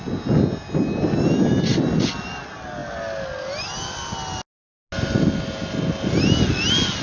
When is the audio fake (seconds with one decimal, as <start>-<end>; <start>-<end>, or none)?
none